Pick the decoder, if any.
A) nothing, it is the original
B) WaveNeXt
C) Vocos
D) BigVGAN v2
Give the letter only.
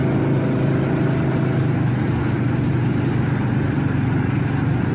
A